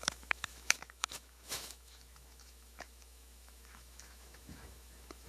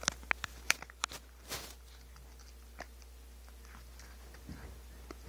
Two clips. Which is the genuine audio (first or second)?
second